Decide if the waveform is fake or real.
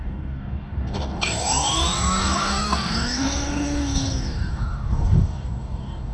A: fake